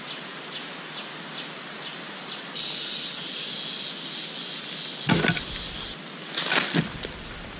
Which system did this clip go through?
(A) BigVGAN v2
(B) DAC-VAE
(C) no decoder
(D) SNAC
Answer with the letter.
C